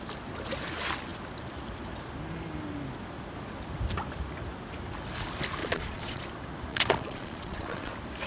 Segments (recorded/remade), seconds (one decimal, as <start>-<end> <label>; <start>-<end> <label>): 0.0-5.6 recorded; 5.6-6.2 remade; 6.2-6.7 recorded; 6.7-7.9 remade; 7.9-8.3 recorded